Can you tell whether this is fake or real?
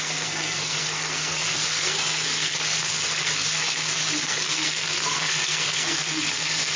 fake